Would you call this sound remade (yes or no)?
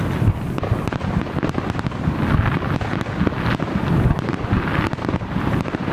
no